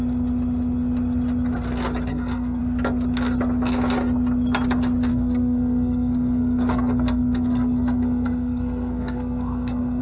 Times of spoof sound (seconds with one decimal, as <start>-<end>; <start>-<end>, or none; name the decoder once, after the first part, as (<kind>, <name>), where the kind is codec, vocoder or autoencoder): 2.1-2.6 (codec, SNAC); 5.1-10.0